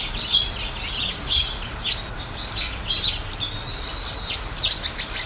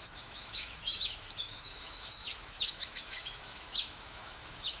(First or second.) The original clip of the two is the first